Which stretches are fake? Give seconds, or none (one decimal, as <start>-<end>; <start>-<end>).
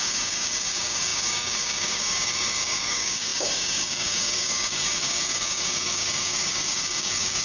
0.0-7.4